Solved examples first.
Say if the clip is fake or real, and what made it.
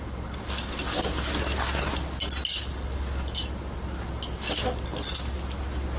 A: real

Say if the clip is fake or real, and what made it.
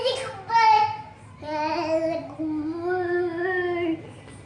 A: real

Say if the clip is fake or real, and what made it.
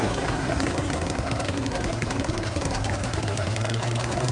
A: fake, codec, SNAC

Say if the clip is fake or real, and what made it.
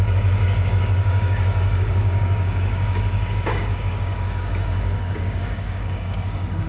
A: fake, codec, DAC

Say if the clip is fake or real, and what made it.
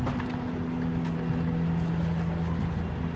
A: real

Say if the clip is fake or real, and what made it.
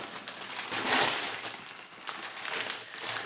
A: real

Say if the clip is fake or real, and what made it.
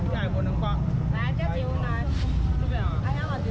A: real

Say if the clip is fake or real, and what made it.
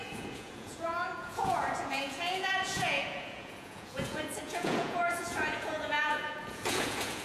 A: fake, vocoder, Vocos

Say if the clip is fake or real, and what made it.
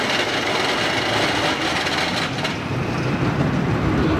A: real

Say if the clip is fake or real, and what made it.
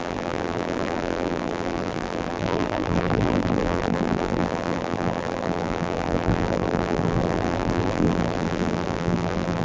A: fake, vocoder, BigVGAN v2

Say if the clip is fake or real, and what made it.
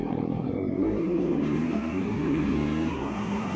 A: fake, codec, SNAC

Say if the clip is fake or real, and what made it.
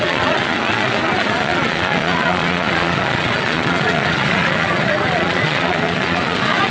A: fake, vocoder, Vocos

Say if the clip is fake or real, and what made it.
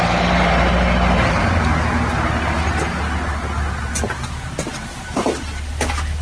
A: real